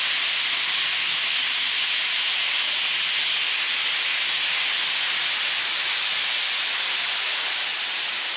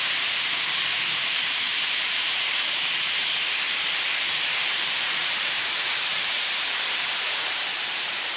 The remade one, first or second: second